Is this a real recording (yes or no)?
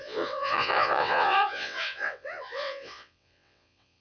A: no